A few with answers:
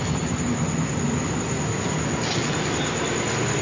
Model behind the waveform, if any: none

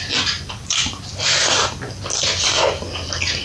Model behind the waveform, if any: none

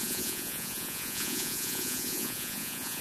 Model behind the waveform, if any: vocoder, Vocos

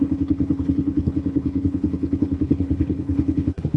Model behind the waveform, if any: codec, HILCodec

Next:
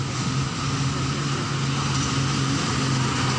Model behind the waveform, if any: none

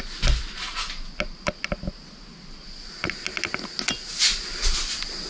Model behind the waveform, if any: none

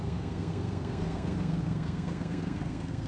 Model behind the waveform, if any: codec, SNAC